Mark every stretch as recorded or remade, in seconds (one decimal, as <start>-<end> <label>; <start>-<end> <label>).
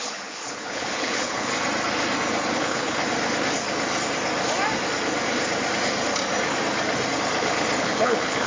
0.0-1.5 remade; 1.5-2.5 recorded; 2.5-3.0 remade; 3.0-7.8 recorded; 7.8-8.5 remade